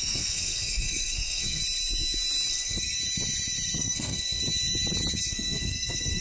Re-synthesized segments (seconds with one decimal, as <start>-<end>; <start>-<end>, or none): 0.0-1.6; 2.5-3.0; 3.8-4.4; 5.2-6.2